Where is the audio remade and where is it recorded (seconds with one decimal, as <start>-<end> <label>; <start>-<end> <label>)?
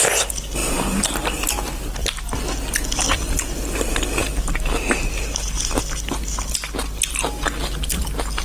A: 0.0-0.6 recorded; 0.6-2.1 remade; 2.1-8.4 recorded